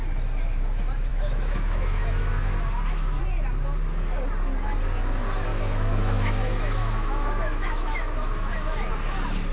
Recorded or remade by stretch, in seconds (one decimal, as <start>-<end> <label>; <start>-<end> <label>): 0.0-1.1 recorded; 1.1-3.2 remade; 3.2-5.5 recorded; 5.5-8.9 remade; 8.9-9.5 recorded